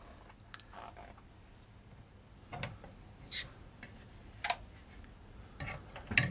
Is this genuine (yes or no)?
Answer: yes